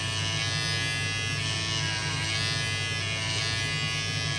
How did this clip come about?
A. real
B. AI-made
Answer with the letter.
A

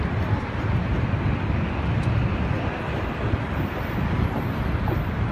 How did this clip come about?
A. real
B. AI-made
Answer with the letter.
A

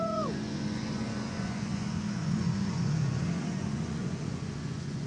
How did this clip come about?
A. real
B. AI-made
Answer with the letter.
B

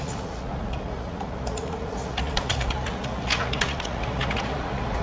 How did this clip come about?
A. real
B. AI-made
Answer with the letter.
B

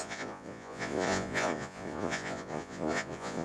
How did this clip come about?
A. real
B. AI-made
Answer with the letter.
B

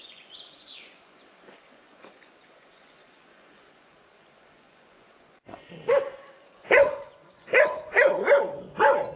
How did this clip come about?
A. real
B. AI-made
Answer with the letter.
B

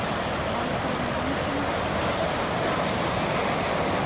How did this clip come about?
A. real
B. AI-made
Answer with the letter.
A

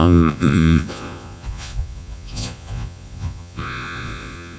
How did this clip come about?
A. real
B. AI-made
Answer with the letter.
B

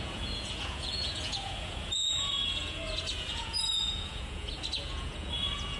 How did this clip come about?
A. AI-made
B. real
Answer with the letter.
A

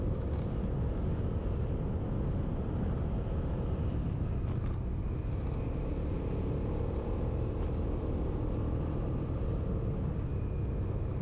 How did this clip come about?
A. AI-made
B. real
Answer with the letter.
B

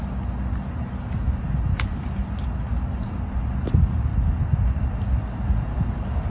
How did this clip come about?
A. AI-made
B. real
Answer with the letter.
B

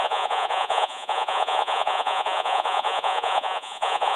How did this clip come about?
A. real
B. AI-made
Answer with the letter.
B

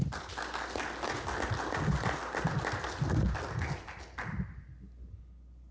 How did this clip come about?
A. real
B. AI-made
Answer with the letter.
A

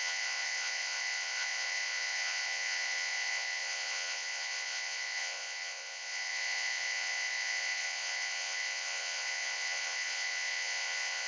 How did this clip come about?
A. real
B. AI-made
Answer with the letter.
B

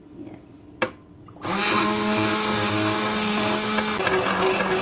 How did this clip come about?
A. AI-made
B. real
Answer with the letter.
B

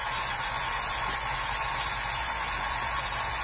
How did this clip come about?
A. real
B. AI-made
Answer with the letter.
B